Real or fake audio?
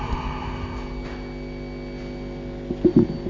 real